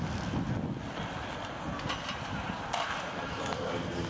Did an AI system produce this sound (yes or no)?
no